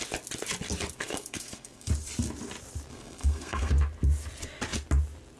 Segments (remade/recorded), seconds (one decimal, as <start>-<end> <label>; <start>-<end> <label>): 0.0-1.0 recorded; 1.0-1.9 remade; 1.9-2.9 recorded; 2.9-3.7 remade; 3.7-5.4 recorded